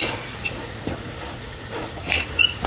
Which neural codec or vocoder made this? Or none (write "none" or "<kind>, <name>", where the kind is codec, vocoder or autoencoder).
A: vocoder, Vocos